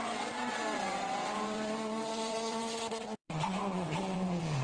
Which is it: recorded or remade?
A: remade